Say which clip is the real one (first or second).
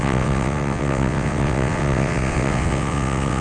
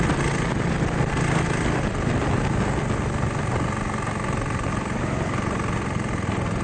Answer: second